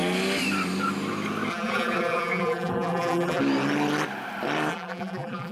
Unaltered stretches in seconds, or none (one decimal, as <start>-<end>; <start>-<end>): 0.0-1.5; 3.4-4.7